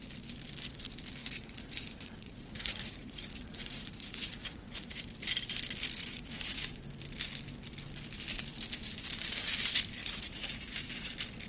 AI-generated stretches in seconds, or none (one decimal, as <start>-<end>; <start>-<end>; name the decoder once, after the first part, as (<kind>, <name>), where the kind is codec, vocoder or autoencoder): 1.2-5.0 (vocoder, Vocos); 6.1-6.7; 10.0-11.1